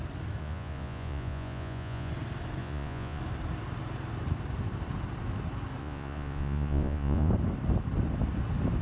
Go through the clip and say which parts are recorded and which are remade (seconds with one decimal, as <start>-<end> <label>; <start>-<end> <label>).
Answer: 0.0-0.4 recorded; 0.4-2.1 remade; 2.1-2.6 recorded; 2.6-3.2 remade; 3.2-5.8 recorded; 5.8-7.3 remade; 7.3-8.8 recorded